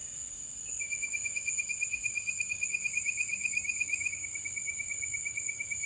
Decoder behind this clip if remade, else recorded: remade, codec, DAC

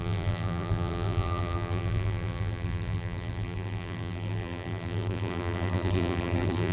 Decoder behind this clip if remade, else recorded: remade, vocoder, BigVGAN v2